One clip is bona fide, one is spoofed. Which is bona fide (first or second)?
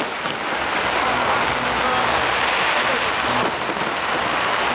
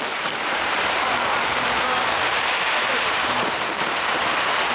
first